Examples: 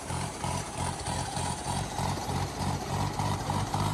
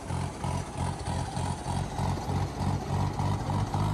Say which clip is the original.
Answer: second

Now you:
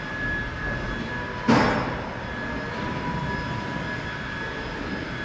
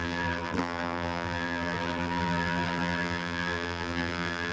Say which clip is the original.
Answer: first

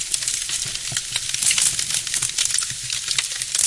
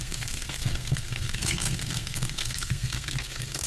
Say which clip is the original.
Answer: first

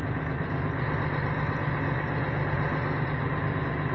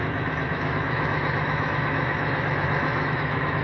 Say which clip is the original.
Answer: first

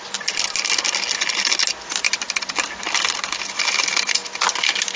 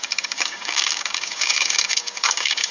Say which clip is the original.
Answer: first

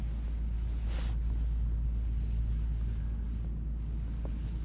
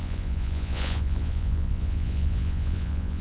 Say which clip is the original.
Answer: first